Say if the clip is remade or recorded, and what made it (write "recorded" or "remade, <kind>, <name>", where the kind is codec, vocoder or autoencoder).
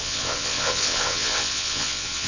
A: remade, vocoder, WaveNeXt